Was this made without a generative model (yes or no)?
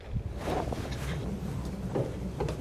no